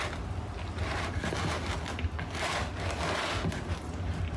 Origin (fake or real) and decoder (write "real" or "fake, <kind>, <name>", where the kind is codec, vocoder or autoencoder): real